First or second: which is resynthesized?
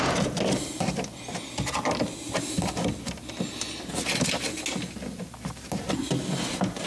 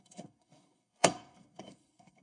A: second